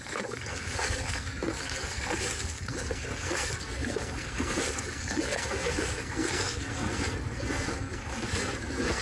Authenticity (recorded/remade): remade